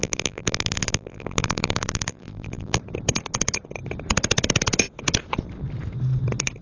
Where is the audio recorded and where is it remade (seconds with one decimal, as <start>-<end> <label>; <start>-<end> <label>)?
0.0-2.8 remade; 2.8-6.6 recorded